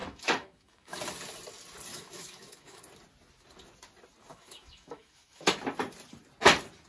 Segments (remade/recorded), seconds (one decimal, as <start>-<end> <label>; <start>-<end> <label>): 0.0-1.0 remade; 1.0-1.9 recorded; 1.9-2.8 remade; 2.8-4.3 recorded; 4.3-5.6 remade; 5.6-6.9 recorded